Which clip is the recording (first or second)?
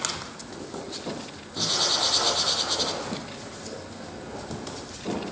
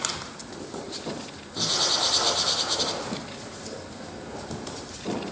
first